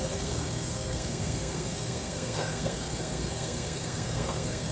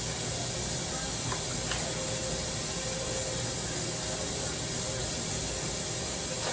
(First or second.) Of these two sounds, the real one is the second